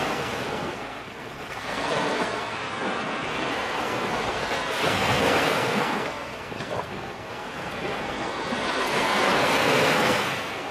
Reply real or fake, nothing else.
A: fake